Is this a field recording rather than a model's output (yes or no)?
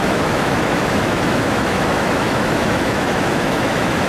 no